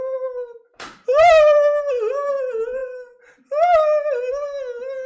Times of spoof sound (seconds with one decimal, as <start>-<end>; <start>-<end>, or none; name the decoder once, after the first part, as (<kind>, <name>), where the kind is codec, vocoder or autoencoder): 0.7-2.3 (vocoder, BigVGAN v2)